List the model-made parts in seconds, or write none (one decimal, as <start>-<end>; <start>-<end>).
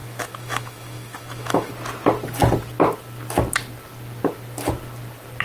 0.0-1.7